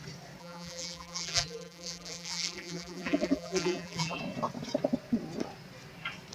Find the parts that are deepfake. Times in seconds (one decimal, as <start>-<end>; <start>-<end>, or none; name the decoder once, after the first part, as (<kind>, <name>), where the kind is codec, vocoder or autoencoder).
0.4-4.2 (vocoder, BigVGAN v2)